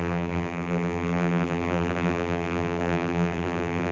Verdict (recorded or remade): remade